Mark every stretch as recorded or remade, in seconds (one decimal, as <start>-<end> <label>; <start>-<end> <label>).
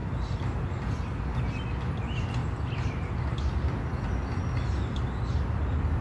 0.0-6.0 recorded